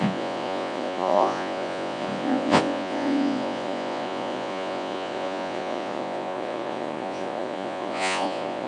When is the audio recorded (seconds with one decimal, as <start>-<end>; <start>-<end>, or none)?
none